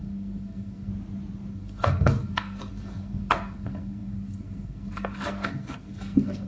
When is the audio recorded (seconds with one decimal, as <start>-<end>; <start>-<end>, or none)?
0.9-1.5